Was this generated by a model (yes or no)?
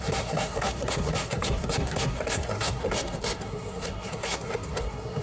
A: yes